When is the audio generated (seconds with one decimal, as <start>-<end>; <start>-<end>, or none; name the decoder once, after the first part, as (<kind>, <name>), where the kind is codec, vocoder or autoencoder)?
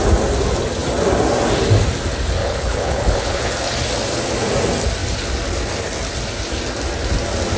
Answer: 2.4-3.5 (codec, HILCodec)